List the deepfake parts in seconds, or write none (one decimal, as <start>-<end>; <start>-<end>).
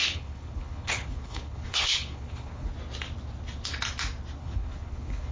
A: 0.0-2.7; 4.4-5.3